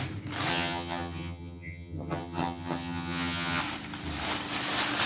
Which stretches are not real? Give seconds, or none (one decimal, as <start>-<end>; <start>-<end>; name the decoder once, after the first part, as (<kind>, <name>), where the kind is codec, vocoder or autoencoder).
0.5-3.6 (vocoder, HiFi-GAN)